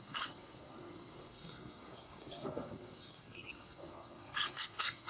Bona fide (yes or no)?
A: no